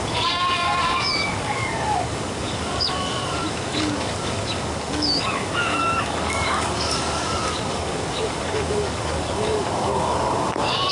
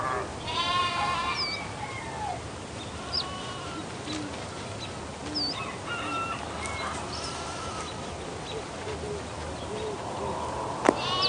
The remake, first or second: first